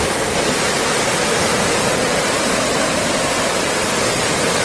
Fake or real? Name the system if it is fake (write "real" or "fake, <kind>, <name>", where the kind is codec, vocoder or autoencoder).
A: real